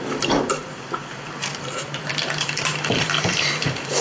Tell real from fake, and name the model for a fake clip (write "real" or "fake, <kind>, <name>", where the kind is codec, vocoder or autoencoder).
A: fake, vocoder, BigVGAN v2